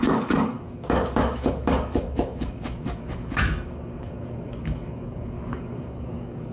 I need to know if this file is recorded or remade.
remade